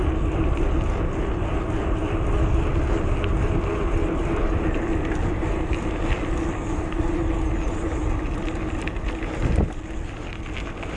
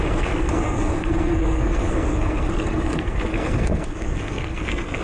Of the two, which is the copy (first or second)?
second